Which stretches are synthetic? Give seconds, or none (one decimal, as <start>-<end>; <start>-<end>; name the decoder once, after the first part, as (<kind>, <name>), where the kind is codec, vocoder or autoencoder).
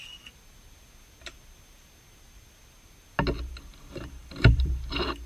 3.7-4.7 (vocoder, BigVGAN v2)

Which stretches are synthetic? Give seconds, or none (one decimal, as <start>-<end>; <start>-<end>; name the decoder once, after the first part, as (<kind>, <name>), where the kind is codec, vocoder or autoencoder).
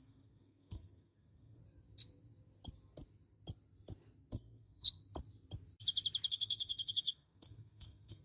0.0-1.6 (codec, SNAC); 4.3-5.0; 6.3-8.2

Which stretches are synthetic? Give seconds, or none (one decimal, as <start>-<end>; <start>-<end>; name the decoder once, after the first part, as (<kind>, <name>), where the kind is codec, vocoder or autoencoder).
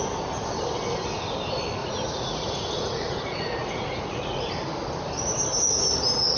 1.8-4.5 (vocoder, Vocos)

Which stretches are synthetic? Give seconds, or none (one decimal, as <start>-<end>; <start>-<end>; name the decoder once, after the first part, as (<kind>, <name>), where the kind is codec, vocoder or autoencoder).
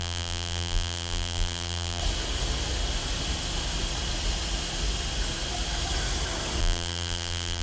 0.0-2.0 (vocoder, BigVGAN v2); 6.6-7.6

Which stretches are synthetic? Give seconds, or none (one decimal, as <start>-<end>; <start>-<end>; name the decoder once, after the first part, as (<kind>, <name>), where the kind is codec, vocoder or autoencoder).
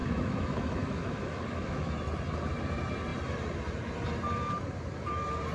0.0-1.9 (autoencoder, DAC-VAE)